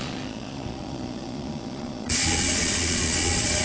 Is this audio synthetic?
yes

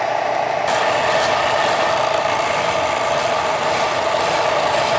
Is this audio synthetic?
no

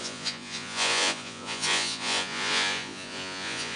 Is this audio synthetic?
yes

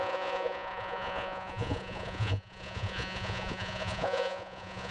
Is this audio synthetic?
yes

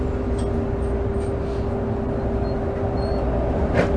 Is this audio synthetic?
no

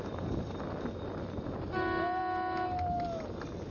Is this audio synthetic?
no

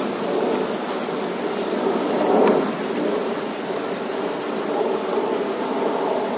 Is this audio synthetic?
no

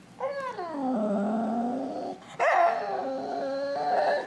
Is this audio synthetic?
no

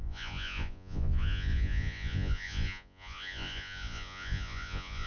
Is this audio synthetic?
yes